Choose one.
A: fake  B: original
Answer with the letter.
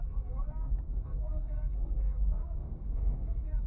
A